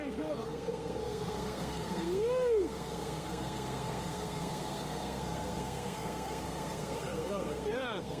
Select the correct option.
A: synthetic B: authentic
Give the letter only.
A